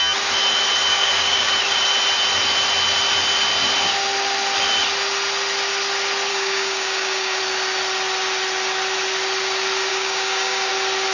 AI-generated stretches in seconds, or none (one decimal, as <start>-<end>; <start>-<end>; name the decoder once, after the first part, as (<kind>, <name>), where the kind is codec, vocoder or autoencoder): 0.9-1.5 (codec, DAC); 6.3-7.4; 9.9-10.7

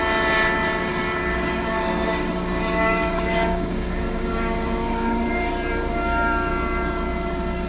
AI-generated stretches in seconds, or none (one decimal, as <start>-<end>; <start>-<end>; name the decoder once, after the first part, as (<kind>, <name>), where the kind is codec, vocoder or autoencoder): 0.9-5.5 (codec, DAC); 5.9-6.5

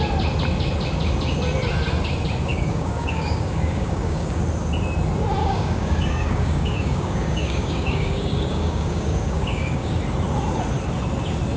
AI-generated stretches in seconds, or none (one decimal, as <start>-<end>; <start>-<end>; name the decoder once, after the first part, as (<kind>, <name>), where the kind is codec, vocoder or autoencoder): 2.5-4.4 (codec, DAC); 5.4-10.0